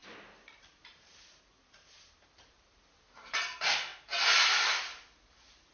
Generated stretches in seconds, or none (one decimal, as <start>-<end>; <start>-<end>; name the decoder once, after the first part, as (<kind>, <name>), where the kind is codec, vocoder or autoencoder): 0.0-3.9 (vocoder, BigVGAN v2); 5.3-5.7